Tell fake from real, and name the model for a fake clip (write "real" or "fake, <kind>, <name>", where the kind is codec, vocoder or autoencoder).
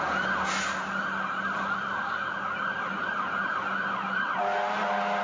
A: real